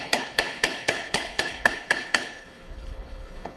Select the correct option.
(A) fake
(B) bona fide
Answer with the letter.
A